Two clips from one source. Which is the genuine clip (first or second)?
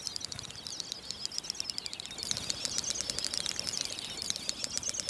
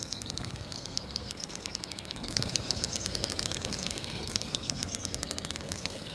first